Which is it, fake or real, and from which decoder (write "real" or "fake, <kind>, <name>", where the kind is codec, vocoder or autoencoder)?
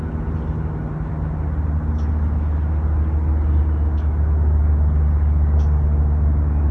real